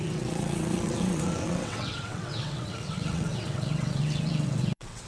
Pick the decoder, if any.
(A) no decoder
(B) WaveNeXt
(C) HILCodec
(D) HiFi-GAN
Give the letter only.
B